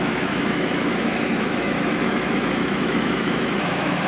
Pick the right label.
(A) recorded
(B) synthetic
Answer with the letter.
B